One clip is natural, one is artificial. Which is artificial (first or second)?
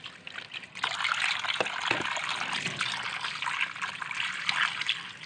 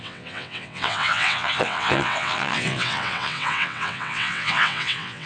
second